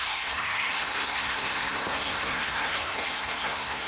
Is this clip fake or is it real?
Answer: fake